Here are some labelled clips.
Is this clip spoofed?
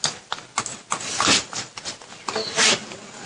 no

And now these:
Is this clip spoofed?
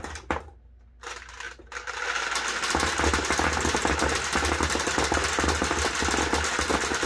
no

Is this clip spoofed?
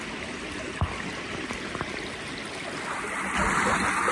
no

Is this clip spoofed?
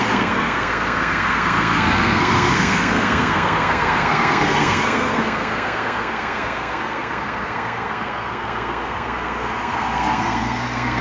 yes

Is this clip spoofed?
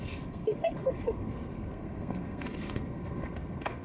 yes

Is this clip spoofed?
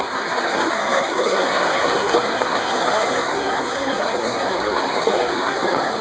yes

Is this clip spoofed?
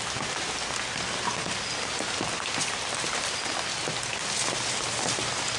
no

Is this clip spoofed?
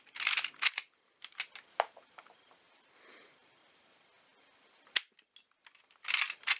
no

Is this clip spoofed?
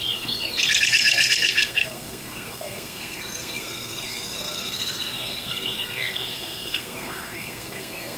yes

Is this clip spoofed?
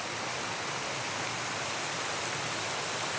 no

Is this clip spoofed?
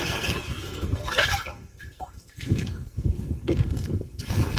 yes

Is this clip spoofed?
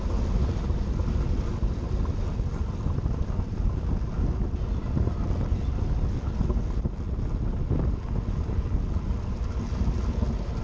no